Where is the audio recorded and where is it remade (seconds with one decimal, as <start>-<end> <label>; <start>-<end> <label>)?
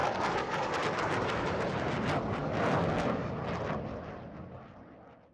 0.0-1.6 remade; 1.6-2.4 recorded; 2.4-3.3 remade; 3.3-5.3 recorded